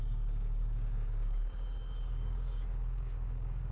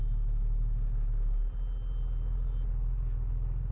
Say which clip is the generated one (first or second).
first